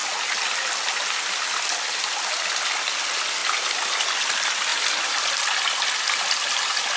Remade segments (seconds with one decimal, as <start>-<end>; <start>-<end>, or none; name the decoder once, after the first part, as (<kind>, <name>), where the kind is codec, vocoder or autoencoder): none